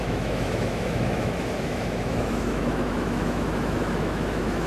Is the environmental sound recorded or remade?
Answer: remade